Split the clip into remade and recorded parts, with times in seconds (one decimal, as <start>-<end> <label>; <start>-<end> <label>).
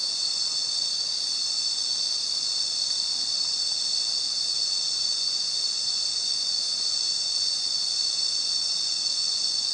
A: 0.0-0.6 remade; 0.6-4.5 recorded; 4.5-9.7 remade